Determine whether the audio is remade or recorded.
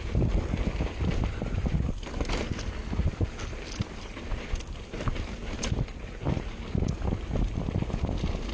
recorded